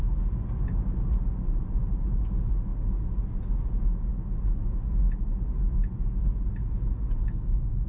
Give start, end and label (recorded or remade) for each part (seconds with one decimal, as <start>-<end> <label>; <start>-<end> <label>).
0.0-7.9 recorded